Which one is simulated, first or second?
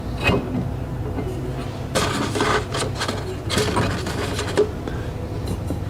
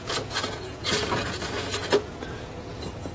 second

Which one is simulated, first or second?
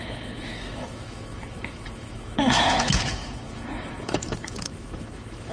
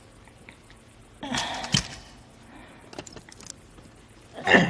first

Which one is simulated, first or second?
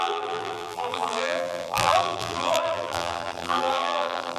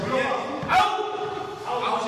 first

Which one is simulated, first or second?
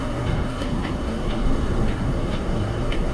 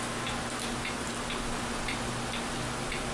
first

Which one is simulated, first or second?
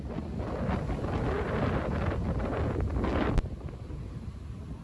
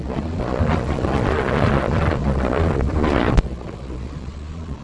second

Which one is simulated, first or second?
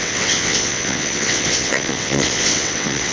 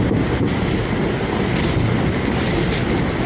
first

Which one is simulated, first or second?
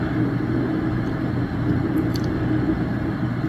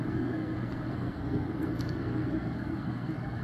second